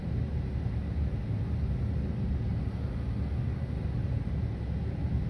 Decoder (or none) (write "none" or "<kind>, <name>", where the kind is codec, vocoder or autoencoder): none